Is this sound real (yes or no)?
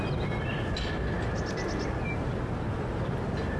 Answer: yes